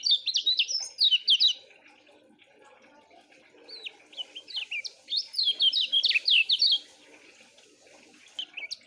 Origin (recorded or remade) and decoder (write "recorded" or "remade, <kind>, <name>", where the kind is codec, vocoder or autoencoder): recorded